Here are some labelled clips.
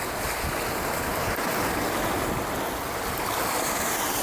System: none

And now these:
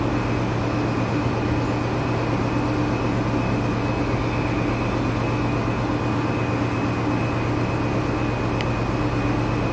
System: none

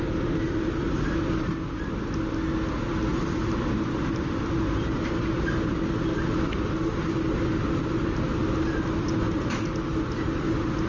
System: none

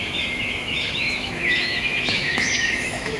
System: autoencoder, DAC-VAE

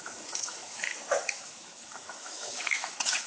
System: autoencoder, DAC-VAE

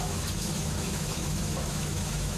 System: autoencoder, DAC-VAE